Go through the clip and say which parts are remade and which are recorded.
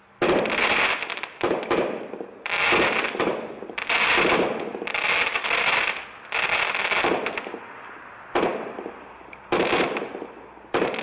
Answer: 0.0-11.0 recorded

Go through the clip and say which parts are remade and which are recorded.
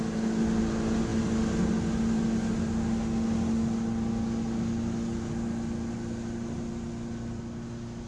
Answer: 0.0-8.1 recorded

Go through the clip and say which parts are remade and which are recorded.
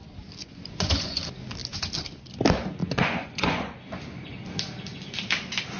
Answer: 0.0-0.4 recorded; 0.4-1.2 remade; 1.2-2.8 recorded; 2.8-3.7 remade; 3.7-5.8 recorded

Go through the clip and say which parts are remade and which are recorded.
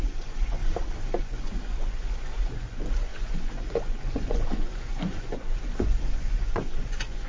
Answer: 0.0-0.6 remade; 0.6-1.2 recorded; 1.2-7.3 remade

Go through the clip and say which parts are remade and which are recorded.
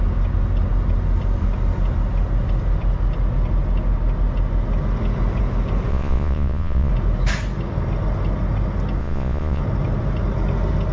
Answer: 0.0-5.9 recorded; 5.9-6.9 remade; 6.9-9.0 recorded; 9.0-9.6 remade; 9.6-10.9 recorded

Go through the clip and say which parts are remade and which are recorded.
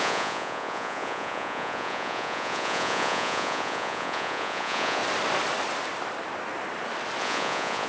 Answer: 0.0-5.0 remade; 5.0-7.2 recorded; 7.2-7.9 remade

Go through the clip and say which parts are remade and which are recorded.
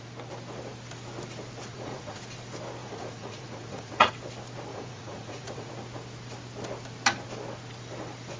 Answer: 0.0-1.7 recorded; 1.7-2.2 remade; 2.2-2.8 recorded; 2.8-4.1 remade; 4.1-4.7 recorded; 4.7-5.7 remade; 5.7-8.4 recorded